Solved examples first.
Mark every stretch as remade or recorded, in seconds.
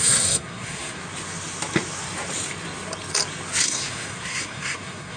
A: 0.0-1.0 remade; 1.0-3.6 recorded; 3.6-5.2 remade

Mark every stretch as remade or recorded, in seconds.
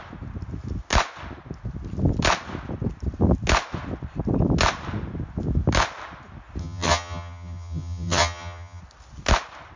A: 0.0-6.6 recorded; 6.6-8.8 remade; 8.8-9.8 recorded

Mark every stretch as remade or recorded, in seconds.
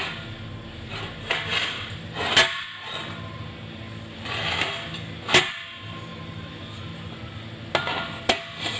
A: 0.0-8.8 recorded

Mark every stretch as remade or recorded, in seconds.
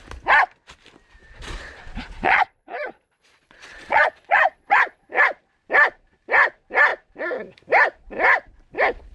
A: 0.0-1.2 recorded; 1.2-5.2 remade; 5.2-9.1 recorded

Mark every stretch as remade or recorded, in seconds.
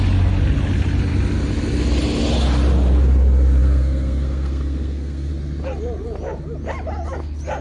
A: 0.0-3.6 recorded; 3.6-5.3 remade; 5.3-7.6 recorded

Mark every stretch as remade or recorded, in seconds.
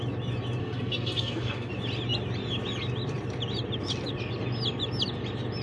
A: 0.0-0.6 recorded; 0.6-1.7 remade; 1.7-5.6 recorded